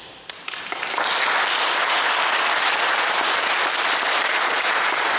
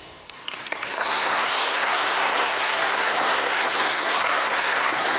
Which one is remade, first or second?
second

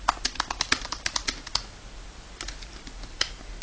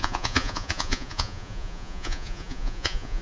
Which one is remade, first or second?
second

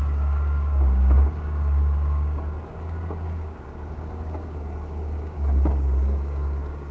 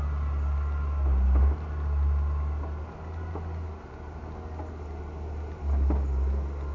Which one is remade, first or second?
first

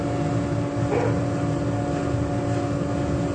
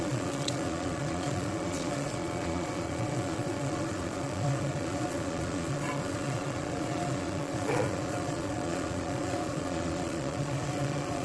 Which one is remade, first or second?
second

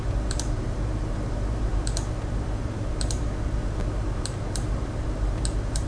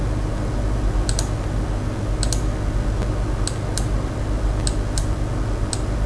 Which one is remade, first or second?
first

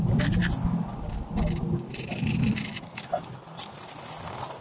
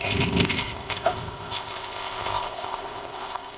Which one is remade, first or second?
second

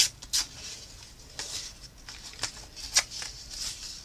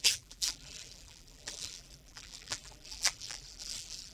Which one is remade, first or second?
second